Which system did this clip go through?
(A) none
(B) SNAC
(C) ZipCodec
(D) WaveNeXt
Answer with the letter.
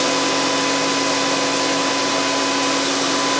A